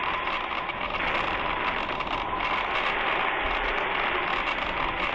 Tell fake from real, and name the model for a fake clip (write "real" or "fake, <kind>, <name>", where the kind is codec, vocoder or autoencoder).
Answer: real